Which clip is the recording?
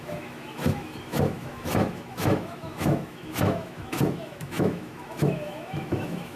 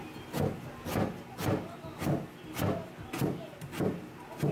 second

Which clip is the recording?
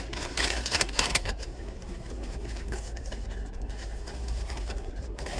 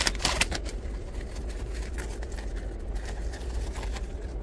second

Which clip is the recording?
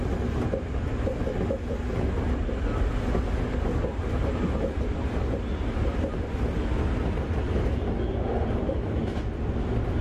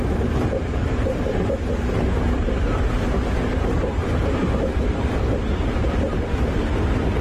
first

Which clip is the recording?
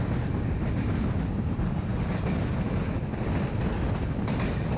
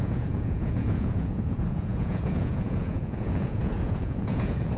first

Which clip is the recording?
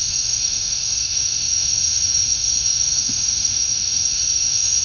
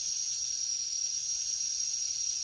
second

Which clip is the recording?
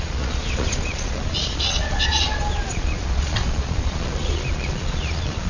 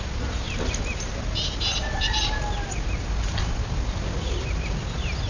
second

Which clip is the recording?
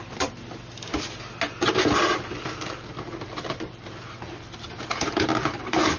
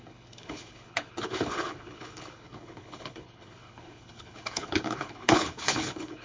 first